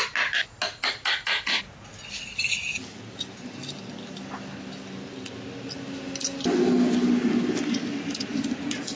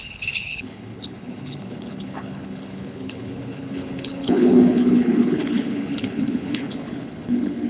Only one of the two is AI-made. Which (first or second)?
second